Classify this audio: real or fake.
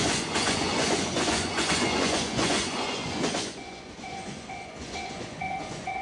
fake